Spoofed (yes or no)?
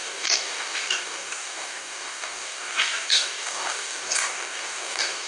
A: yes